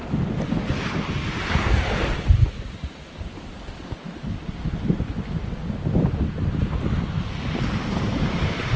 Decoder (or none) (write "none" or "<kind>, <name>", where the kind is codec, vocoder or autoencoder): none